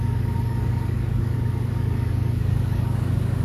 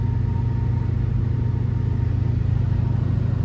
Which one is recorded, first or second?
second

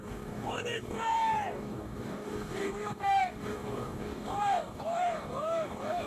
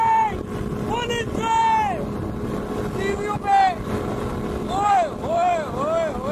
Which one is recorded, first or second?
second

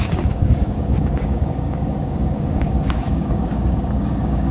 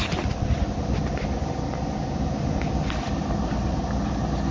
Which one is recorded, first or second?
second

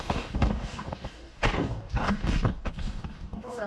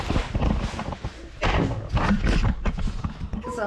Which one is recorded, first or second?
second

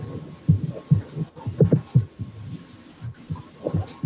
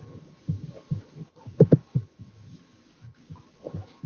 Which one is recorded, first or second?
first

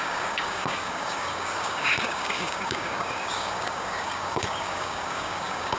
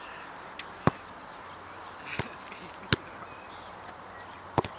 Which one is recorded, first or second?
second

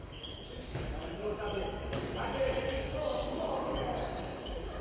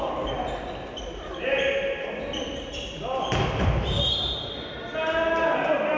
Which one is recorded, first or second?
second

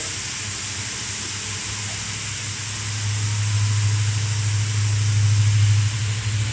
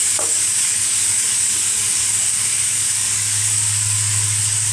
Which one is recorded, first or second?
first